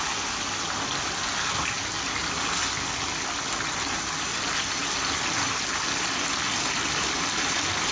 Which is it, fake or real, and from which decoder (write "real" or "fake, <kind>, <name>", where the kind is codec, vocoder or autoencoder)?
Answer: real